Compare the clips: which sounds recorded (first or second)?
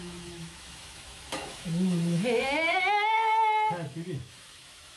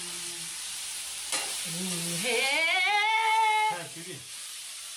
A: second